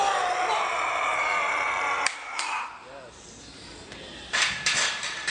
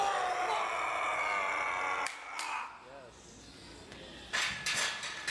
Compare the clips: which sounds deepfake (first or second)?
first